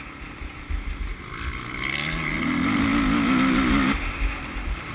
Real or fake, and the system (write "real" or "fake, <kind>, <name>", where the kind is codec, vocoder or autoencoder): real